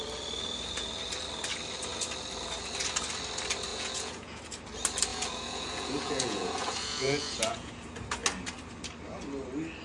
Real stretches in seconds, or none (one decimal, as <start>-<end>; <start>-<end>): 0.0-3.7; 4.4-5.1; 7.7-9.8